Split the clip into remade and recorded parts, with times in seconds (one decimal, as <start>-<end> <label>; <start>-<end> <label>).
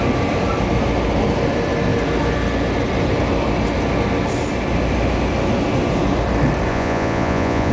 0.0-6.7 recorded; 6.7-7.7 remade